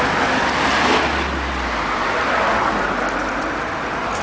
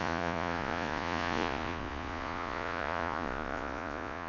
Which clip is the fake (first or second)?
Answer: second